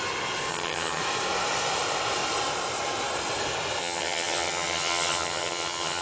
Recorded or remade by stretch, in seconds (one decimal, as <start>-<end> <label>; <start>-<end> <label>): 0.0-0.5 recorded; 0.5-1.0 remade; 1.0-3.8 recorded; 3.8-6.0 remade